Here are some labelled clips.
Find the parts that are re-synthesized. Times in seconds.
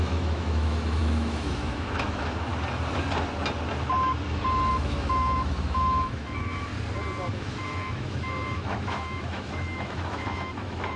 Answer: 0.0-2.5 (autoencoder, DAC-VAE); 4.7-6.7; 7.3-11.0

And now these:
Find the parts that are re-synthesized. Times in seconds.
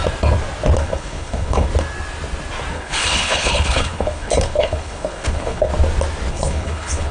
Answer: 0.8-1.7 (codec, HILCodec); 2.7-5.7; 6.3-7.1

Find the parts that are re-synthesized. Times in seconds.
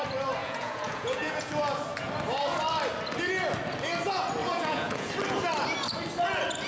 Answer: 0.4-1.5 (vocoder, Vocos); 4.4-5.1